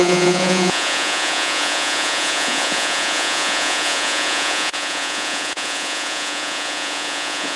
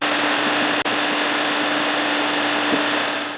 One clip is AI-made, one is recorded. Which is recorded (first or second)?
second